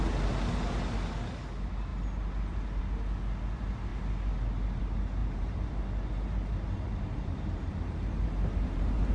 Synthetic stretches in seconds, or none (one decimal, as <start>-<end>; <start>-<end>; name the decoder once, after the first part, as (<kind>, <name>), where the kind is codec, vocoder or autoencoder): 5.2-9.1 (vocoder, BigVGAN v2)